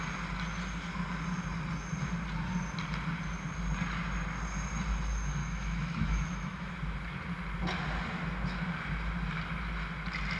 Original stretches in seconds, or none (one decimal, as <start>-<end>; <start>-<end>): 0.0-5.4; 6.7-10.4

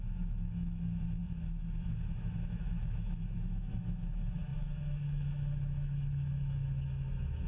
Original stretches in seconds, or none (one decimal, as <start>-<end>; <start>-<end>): none

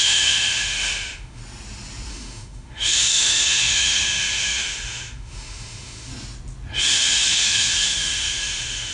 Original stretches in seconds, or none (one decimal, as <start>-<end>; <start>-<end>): 1.4-2.1; 6.1-6.8